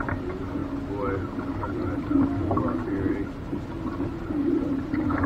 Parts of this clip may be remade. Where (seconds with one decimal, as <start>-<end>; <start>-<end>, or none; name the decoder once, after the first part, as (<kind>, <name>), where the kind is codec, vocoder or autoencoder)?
0.0-0.6 (vocoder, BigVGAN v2); 1.4-5.3